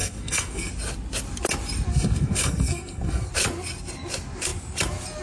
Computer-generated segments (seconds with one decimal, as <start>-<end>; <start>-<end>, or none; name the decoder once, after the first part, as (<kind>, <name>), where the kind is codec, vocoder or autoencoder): 0.0-0.7 (codec, SNAC); 1.9-3.3